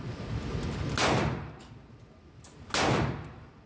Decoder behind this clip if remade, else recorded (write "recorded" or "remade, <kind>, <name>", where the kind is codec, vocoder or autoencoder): recorded